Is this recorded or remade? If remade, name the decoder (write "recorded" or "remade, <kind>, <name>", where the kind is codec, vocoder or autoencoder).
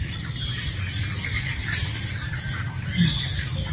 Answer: recorded